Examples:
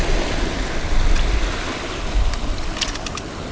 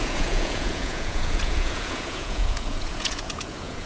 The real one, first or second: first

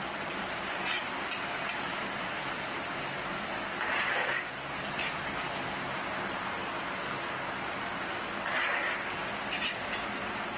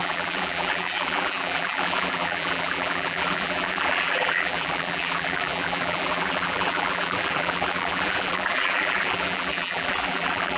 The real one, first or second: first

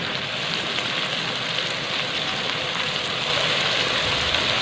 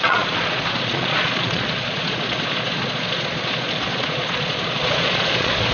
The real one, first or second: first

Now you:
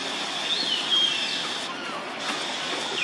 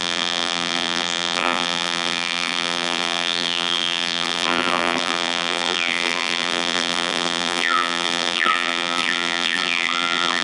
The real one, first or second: first